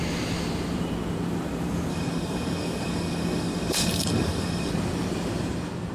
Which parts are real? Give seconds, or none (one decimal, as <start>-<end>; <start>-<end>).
0.0-1.9; 4.7-5.9